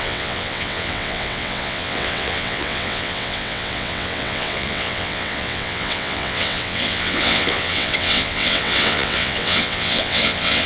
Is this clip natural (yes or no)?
no